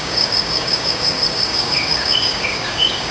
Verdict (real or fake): fake